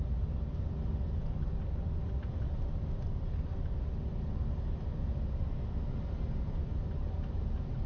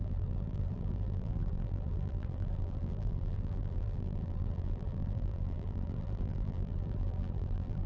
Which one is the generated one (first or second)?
second